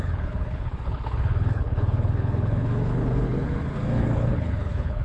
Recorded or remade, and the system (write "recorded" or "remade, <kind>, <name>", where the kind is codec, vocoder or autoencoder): remade, codec, HILCodec